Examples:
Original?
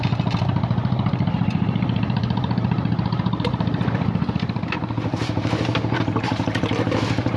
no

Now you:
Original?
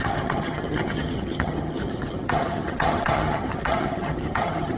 no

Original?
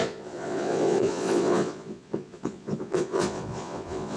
no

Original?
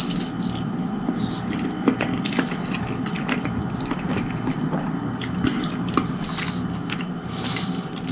yes